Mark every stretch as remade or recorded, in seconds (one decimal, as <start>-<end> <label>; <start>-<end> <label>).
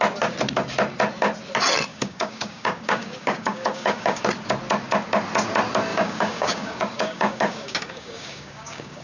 0.0-1.9 recorded; 1.9-4.2 remade; 4.2-5.9 recorded; 5.9-9.0 remade